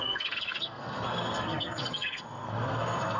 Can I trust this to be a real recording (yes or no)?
no